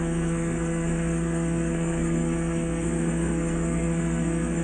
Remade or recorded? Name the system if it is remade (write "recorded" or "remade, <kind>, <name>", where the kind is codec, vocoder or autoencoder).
remade, codec, SNAC